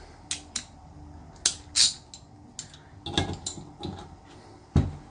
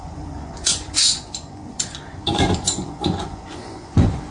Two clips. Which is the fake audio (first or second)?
second